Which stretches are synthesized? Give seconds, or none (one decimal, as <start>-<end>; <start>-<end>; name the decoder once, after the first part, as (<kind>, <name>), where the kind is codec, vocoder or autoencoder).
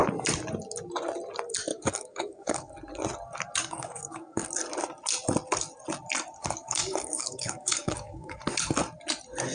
1.7-2.7 (codec, DAC); 3.6-4.5; 6.4-8.4